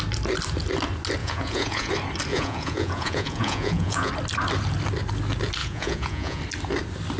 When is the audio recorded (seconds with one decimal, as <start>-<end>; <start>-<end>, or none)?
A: 0.0-1.2; 1.9-2.3; 4.1-5.6; 6.4-7.2